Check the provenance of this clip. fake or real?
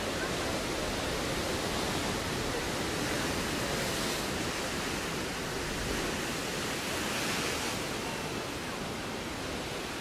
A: real